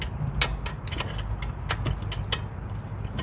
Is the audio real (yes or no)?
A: yes